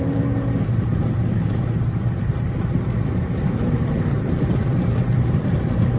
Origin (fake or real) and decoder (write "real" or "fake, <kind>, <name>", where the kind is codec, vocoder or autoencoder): fake, vocoder, BigVGAN v2